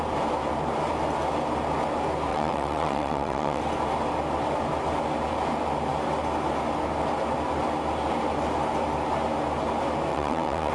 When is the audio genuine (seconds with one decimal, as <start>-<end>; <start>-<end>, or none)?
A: 0.0-2.3; 3.6-10.1